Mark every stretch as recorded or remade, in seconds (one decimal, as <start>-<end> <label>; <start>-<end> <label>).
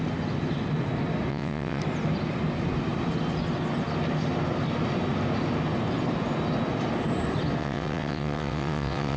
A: 0.0-1.3 recorded; 1.3-1.8 remade; 1.8-7.6 recorded; 7.6-9.2 remade